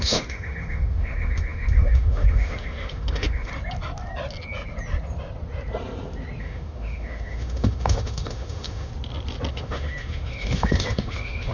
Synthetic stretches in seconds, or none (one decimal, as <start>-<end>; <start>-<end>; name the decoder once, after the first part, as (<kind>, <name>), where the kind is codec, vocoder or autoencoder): 0.0-3.5 (autoencoder, DAC-VAE); 6.4-8.9; 9.5-11.5

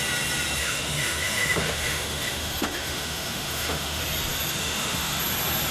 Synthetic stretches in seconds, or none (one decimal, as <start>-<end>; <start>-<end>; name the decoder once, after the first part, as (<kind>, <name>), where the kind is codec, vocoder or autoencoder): 0.6-4.0 (autoencoder, DAC-VAE); 4.6-5.2

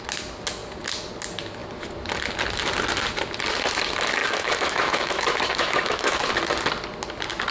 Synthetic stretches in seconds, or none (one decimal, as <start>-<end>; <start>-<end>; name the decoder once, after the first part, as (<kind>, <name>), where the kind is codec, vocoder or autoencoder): 4.2-6.4 (autoencoder, DAC-VAE)

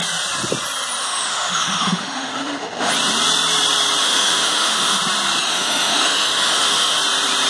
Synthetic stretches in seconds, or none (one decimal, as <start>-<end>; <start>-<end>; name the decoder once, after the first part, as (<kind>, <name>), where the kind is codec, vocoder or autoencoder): 1.0-2.9 (autoencoder, DAC-VAE); 4.0-5.0; 5.4-7.0

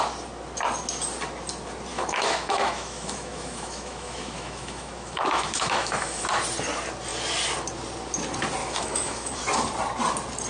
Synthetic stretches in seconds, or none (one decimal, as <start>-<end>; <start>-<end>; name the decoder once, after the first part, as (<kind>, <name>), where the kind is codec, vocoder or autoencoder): 1.9-6.2 (autoencoder, DAC-VAE); 8.6-9.3

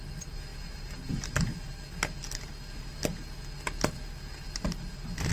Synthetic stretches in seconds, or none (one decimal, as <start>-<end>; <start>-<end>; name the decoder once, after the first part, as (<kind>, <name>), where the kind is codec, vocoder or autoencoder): none

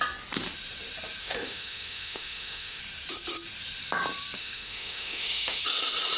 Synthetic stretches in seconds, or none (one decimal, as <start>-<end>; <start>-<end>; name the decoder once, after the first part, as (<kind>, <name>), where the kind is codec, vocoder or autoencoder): 1.2-2.8 (autoencoder, DAC-VAE); 4.4-5.6

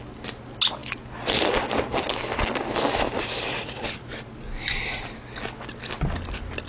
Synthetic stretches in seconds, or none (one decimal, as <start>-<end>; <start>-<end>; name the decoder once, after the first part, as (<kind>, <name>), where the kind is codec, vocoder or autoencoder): none